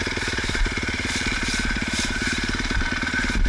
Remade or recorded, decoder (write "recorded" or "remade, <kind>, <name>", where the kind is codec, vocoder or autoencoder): remade, vocoder, BigVGAN v2